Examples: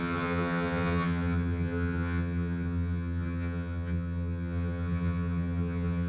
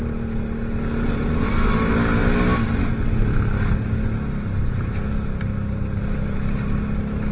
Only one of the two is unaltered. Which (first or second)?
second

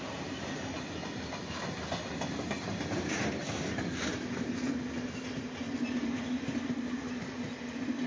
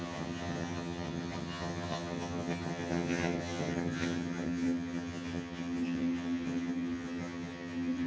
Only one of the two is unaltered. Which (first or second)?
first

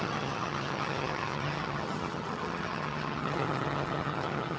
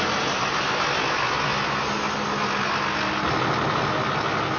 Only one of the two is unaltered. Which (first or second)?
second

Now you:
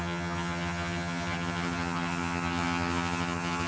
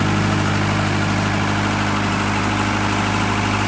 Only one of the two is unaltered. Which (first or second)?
second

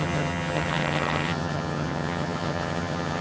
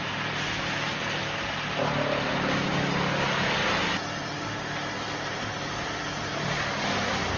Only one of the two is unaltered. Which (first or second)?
second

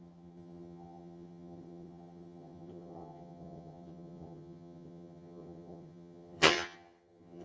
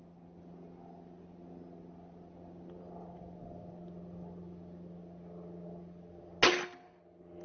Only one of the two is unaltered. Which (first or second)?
second